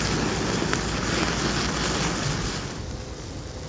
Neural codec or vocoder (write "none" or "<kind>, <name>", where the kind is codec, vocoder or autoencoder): none